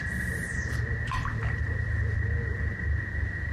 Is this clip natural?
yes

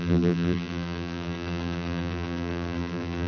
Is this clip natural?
no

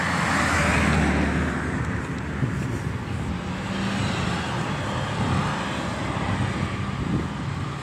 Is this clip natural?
yes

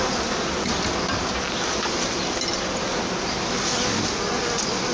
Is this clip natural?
yes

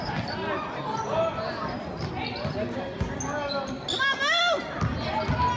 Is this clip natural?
yes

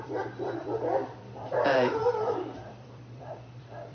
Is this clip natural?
no